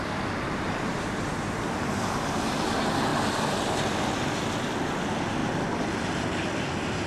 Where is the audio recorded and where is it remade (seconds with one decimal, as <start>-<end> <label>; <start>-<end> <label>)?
0.0-7.1 recorded